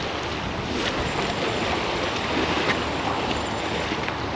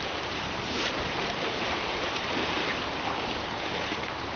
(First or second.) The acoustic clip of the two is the first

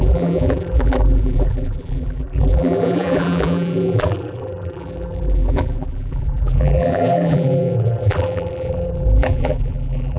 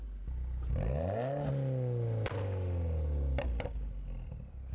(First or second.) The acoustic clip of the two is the second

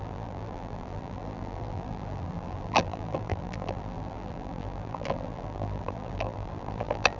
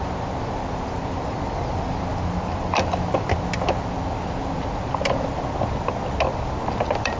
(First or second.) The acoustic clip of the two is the second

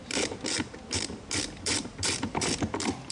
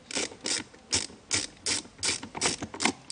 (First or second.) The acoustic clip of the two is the second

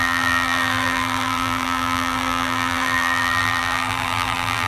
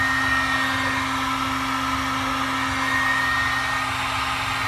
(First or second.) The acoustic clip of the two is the second